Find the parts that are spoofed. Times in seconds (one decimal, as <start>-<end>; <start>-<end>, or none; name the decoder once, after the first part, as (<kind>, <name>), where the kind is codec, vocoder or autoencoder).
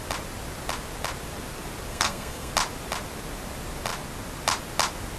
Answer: 1.9-2.5 (codec, SNAC)